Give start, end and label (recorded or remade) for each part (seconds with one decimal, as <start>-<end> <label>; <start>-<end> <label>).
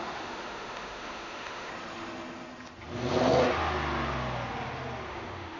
0.0-1.7 remade; 1.7-5.1 recorded; 5.1-5.6 remade